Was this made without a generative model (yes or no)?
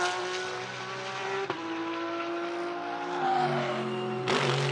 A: yes